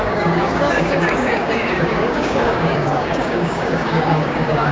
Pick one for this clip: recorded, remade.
remade